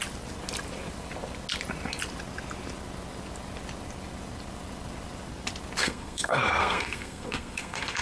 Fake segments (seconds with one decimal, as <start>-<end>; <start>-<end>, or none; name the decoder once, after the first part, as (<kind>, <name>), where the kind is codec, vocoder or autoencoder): 5.8-8.0 (codec, SNAC)